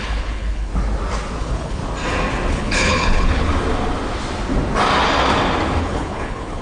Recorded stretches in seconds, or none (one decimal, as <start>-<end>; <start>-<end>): 0.7-1.4; 1.8-2.5; 3.5-5.8